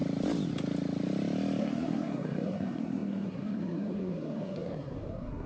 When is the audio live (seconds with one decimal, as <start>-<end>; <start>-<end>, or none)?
0.0-1.6